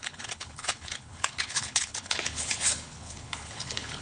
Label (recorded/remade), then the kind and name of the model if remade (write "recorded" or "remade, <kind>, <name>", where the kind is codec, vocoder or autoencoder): remade, codec, HILCodec